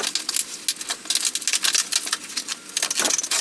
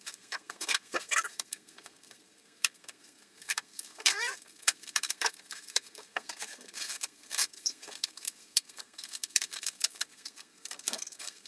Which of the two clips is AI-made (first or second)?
second